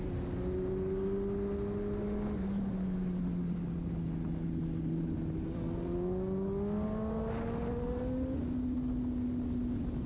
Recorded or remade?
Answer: recorded